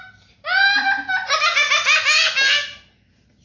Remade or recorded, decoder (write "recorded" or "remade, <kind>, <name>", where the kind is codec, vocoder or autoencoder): recorded